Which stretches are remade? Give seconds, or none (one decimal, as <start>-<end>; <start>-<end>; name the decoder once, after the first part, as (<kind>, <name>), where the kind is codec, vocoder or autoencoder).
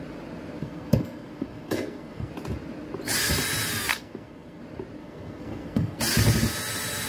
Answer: 0.6-2.3 (codec, SNAC); 3.9-4.6; 5.0-6.0